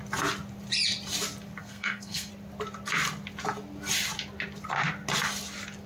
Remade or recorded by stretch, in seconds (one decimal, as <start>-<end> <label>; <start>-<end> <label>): 0.0-1.6 recorded; 1.6-2.3 remade; 2.3-5.9 recorded